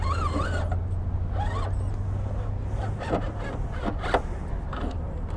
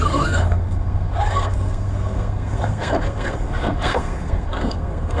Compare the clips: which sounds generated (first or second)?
second